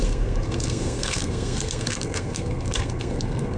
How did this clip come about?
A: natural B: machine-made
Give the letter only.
B